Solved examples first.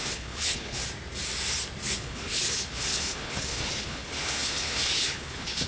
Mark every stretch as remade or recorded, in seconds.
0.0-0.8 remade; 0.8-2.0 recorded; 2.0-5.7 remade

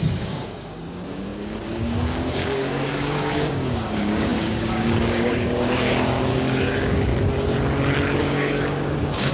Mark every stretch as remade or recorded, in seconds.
0.0-7.1 remade; 7.1-8.2 recorded; 8.2-9.3 remade

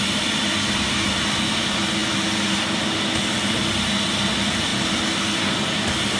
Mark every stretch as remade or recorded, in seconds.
0.0-6.2 recorded

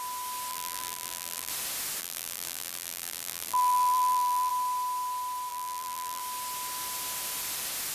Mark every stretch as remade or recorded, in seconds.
0.0-0.5 recorded; 0.5-1.5 remade; 1.5-2.0 recorded; 2.0-4.5 remade; 4.5-5.5 recorded; 5.5-6.2 remade; 6.2-7.9 recorded

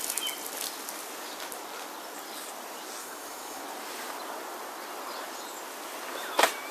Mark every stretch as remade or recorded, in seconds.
0.0-3.0 recorded; 3.0-3.6 remade; 3.6-6.7 recorded

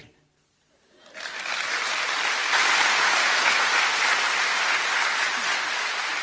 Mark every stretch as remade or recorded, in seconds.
0.0-5.2 recorded; 5.2-6.2 remade

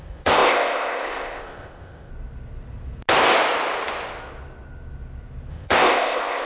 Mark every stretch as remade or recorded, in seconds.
0.0-2.1 remade; 2.1-5.5 recorded; 5.5-6.4 remade